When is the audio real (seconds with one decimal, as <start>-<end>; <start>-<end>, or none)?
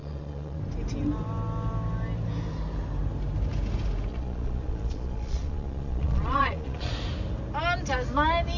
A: 0.6-4.1; 6.9-8.6